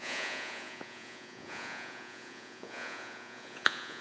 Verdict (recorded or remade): remade